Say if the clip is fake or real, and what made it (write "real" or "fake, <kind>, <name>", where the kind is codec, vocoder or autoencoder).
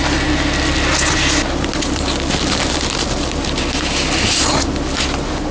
real